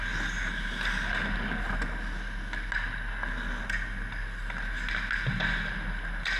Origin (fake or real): real